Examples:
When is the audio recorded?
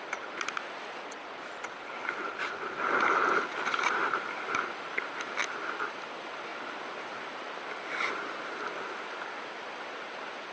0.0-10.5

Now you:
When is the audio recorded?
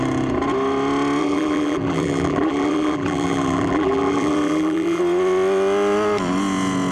0.0-1.2; 5.0-6.9